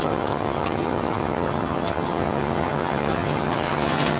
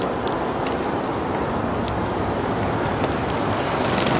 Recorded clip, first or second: second